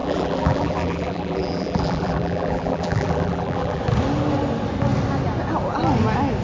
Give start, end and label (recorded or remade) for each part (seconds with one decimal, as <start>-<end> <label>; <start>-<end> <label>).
0.0-3.8 remade; 3.8-6.4 recorded